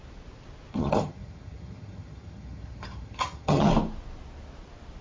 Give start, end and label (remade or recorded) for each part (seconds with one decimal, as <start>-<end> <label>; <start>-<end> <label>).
0.0-0.7 recorded; 0.7-3.7 remade; 3.7-5.0 recorded